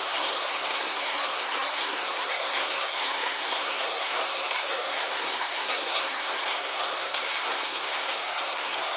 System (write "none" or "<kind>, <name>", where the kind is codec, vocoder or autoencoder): codec, SNAC